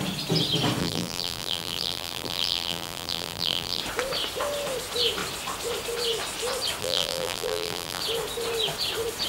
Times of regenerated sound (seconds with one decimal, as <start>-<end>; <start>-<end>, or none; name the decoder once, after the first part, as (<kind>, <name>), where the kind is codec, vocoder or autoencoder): 0.8-3.8 (vocoder, BigVGAN v2); 6.8-8.0